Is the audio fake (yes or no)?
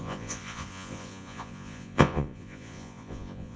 yes